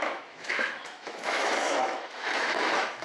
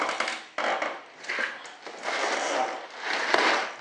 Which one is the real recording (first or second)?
second